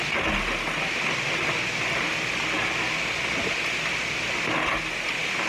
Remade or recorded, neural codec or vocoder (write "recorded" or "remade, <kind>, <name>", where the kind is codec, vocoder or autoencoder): recorded